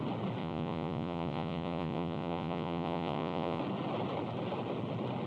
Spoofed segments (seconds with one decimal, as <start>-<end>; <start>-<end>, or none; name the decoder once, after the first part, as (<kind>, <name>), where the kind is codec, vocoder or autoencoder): 0.4-3.6 (vocoder, Vocos)